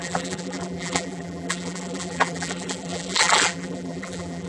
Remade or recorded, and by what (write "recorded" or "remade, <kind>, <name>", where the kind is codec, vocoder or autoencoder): remade, vocoder, BigVGAN v2